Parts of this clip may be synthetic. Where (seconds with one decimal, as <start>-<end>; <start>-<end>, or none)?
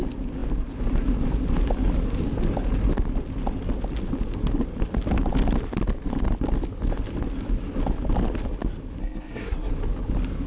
9.0-9.7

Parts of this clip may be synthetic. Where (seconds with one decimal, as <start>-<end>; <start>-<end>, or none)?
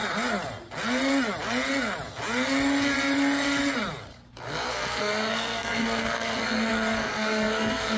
4.7-8.0